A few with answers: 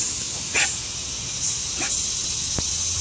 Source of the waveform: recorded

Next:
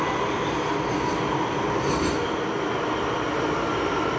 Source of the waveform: recorded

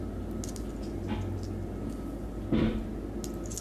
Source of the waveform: recorded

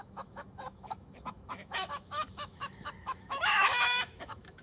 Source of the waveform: remade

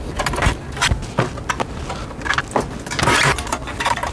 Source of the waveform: recorded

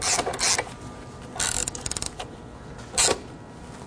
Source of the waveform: recorded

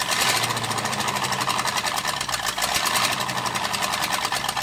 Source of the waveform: recorded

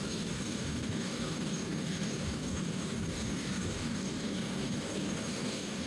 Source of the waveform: remade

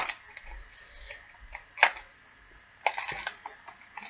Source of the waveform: recorded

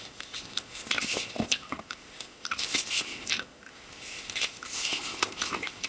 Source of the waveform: remade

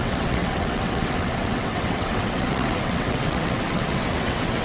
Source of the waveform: remade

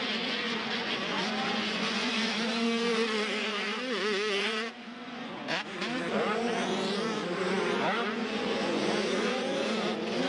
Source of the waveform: remade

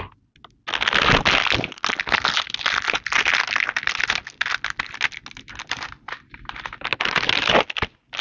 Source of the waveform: recorded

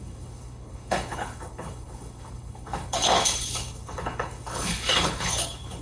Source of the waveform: remade